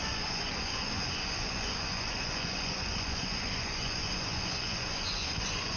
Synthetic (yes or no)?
yes